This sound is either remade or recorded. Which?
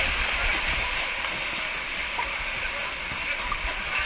recorded